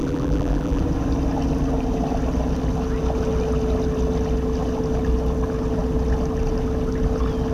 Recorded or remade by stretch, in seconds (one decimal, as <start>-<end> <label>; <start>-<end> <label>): 0.0-0.8 remade; 0.8-7.5 recorded